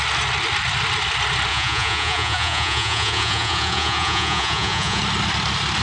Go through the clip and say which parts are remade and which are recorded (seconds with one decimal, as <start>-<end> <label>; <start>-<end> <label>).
0.0-1.5 recorded; 1.5-5.0 remade; 5.0-5.8 recorded